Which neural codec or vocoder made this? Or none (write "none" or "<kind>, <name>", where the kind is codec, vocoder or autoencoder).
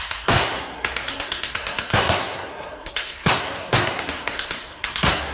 codec, SNAC